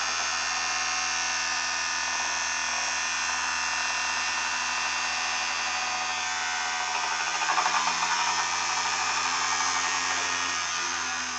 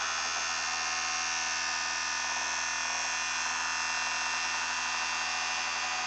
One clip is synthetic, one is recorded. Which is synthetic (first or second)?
first